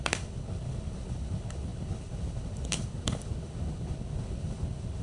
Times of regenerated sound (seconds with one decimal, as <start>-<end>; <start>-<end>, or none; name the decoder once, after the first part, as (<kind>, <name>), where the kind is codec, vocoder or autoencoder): 0.0-5.0 (codec, HILCodec)